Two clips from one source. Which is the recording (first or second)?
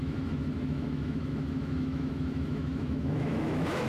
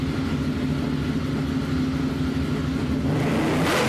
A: second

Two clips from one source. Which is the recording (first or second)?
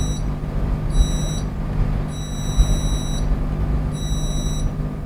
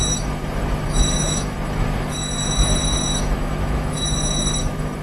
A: first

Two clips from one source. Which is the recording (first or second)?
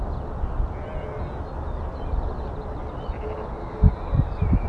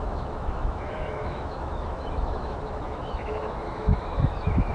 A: first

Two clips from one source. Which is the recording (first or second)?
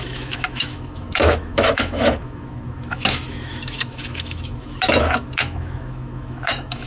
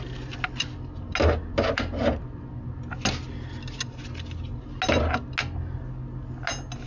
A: second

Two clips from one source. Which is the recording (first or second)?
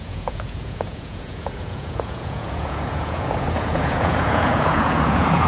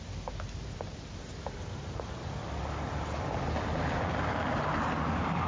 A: second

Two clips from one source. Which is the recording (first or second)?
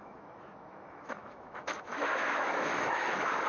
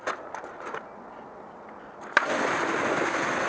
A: second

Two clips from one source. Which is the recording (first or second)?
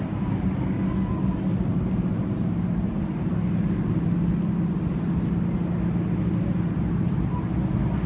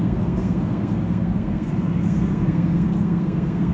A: first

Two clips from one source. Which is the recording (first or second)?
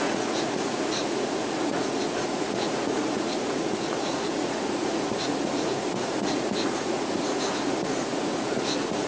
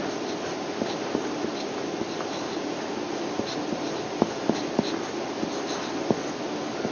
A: second